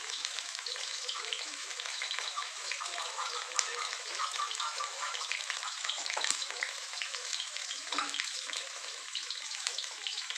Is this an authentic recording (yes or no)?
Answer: no